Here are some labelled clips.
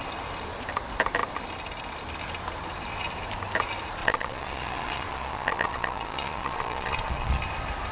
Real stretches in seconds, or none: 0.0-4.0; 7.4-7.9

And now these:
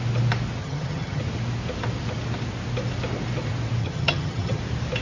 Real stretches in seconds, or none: 0.0-0.6; 1.2-3.8; 4.6-5.0

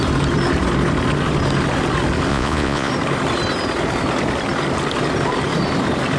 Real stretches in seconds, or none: 0.0-2.3; 2.9-6.2

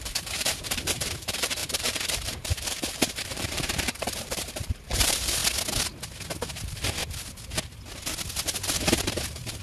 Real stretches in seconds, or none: 5.4-6.6; 7.0-9.0

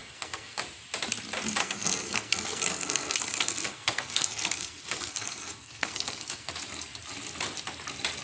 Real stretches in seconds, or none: 0.6-1.6; 6.5-8.2